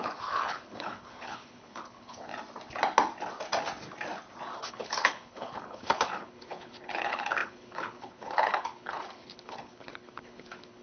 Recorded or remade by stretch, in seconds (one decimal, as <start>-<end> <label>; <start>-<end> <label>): 0.0-2.3 remade; 2.3-4.6 recorded; 4.6-10.8 remade